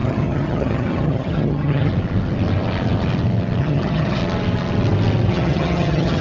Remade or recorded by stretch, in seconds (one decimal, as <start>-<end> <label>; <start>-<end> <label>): 0.0-1.9 remade; 1.9-3.6 recorded; 3.6-4.2 remade; 4.2-5.3 recorded; 5.3-6.2 remade